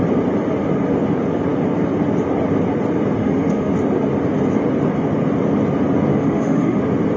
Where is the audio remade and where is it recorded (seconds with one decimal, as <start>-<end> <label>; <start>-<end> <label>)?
0.0-3.2 recorded; 3.2-3.7 remade; 3.7-6.1 recorded; 6.1-6.8 remade; 6.8-7.2 recorded